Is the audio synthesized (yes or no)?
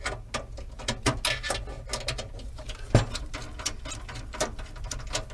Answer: no